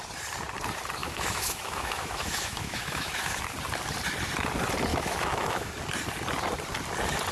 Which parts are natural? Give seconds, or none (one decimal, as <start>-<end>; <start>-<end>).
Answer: 0.0-1.0; 3.4-4.9; 5.7-7.3